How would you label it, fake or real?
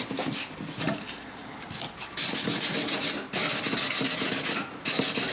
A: real